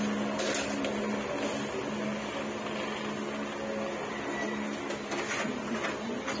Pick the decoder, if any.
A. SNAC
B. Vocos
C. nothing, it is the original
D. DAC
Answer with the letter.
C